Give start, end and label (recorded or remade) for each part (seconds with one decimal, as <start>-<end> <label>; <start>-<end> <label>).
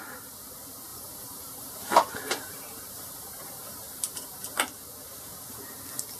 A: 0.0-0.9 recorded; 0.9-4.6 remade; 4.6-6.2 recorded